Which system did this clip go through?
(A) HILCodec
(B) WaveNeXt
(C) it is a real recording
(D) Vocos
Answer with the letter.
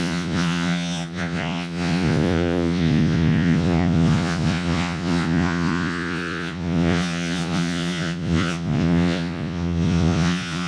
D